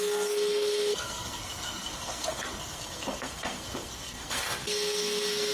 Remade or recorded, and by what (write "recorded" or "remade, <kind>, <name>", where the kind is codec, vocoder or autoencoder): remade, codec, SNAC